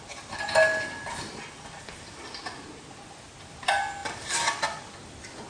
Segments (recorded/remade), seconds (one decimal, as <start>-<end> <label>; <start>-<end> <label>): 0.0-5.5 recorded